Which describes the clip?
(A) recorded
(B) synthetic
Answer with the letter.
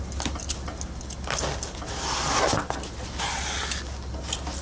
A